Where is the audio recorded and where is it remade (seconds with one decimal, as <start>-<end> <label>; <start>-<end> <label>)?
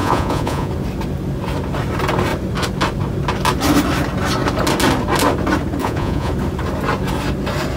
0.0-0.7 remade; 0.7-5.8 recorded; 5.8-6.3 remade; 6.3-7.8 recorded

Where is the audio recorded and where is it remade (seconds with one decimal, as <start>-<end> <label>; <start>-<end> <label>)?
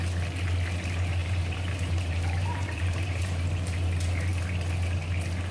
0.0-1.2 recorded; 1.2-3.4 remade; 3.4-5.5 recorded